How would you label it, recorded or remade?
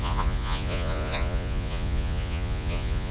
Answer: remade